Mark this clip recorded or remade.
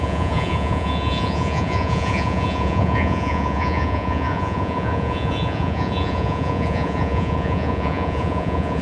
remade